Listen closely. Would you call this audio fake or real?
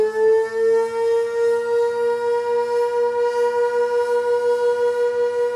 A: real